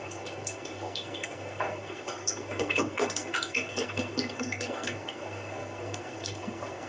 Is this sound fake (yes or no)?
yes